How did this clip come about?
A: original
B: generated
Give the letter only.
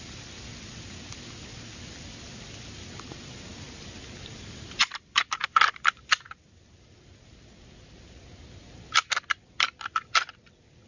A